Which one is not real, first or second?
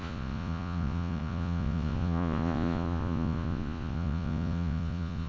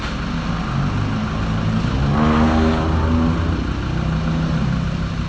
first